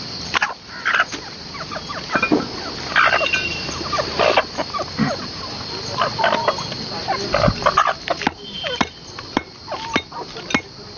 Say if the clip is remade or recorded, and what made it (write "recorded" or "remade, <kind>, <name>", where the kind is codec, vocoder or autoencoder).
recorded